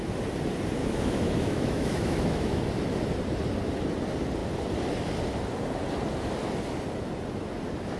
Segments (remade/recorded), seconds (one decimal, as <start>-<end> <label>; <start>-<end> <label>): 0.0-0.8 recorded; 0.8-2.6 remade; 2.6-8.0 recorded